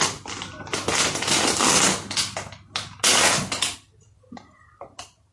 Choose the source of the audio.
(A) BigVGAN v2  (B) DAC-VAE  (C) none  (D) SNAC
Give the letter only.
C